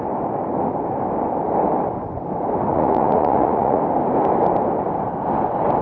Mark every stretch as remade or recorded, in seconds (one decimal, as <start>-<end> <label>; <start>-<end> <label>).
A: 0.0-2.7 recorded; 2.7-3.8 remade; 3.8-5.8 recorded